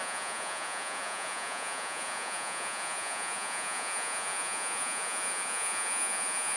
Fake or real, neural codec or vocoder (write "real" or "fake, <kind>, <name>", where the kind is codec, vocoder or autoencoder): fake, vocoder, Vocos